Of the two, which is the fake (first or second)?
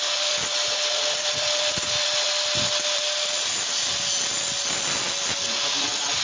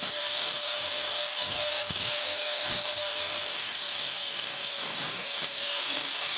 second